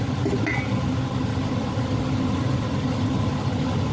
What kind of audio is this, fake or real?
real